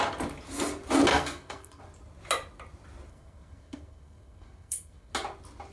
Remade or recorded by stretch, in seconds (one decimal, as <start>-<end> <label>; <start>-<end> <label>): 0.0-1.1 recorded; 1.1-1.8 remade; 1.8-3.1 recorded; 3.1-5.1 remade; 5.1-5.7 recorded